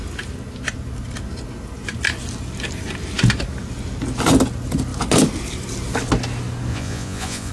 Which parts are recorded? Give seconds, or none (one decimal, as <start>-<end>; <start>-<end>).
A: 0.0-6.7